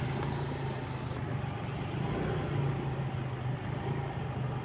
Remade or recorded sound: recorded